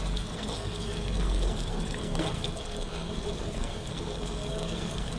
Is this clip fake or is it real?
fake